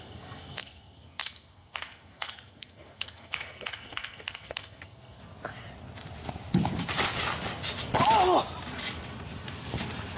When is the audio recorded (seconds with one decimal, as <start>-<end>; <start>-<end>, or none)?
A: 5.2-10.2